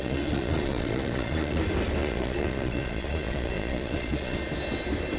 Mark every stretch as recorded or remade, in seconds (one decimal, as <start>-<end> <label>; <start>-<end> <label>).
0.0-1.6 remade; 1.6-2.0 recorded; 2.0-4.4 remade; 4.4-5.2 recorded